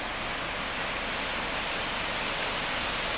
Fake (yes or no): no